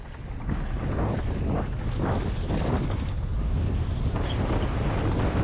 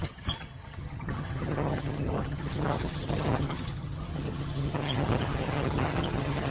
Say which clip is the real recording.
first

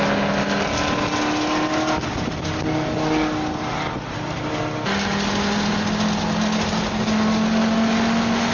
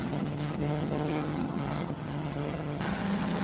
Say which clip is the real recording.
first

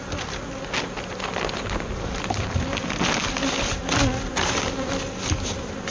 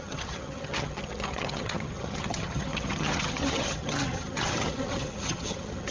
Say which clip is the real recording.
first